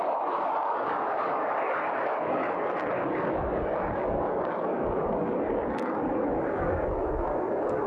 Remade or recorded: remade